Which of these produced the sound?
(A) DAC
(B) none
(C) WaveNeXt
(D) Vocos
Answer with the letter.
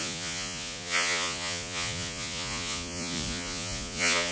D